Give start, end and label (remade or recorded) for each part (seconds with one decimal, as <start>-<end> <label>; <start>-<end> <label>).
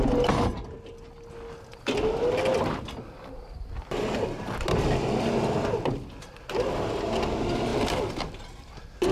0.0-9.1 recorded